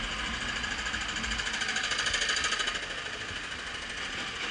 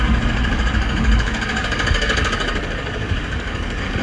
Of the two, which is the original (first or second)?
first